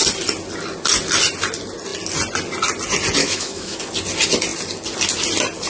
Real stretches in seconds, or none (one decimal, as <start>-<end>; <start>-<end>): 0.0-3.2; 3.8-5.7